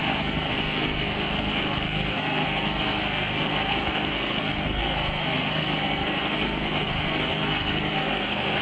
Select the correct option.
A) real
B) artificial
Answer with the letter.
B